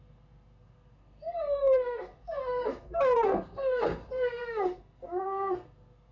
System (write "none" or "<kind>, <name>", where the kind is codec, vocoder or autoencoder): codec, SNAC